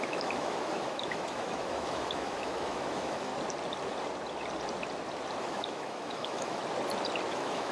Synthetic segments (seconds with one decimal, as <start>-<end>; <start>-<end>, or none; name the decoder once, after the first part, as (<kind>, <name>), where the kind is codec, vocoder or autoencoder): 0.0-3.3 (autoencoder, DAC-VAE); 5.4-6.6; 7.3-7.7